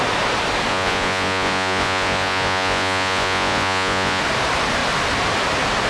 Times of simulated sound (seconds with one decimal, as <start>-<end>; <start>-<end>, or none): 0.7-4.2